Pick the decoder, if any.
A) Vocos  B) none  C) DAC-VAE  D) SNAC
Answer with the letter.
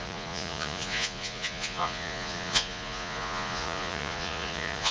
A